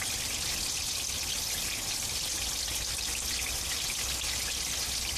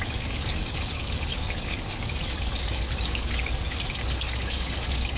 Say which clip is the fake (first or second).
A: second